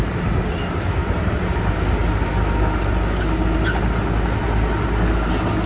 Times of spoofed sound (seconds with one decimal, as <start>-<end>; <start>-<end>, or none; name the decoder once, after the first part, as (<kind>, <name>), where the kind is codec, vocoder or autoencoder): none